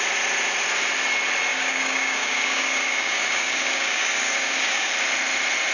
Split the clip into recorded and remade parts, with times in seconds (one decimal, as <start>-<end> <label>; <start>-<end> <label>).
0.0-1.5 recorded; 1.5-4.9 remade; 4.9-5.7 recorded